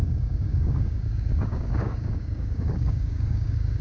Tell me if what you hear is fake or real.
fake